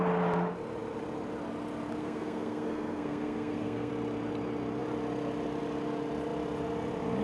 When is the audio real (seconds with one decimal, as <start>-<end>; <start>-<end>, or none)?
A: 0.0-2.0; 3.9-7.2